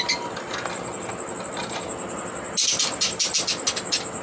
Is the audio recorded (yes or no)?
yes